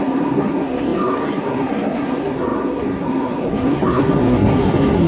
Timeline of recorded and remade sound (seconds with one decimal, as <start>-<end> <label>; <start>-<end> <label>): 0.0-5.1 remade